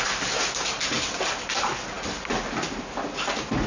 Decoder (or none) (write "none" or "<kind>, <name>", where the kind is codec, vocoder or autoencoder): none